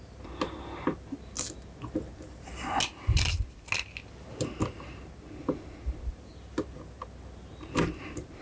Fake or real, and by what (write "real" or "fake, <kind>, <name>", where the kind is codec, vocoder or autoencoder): real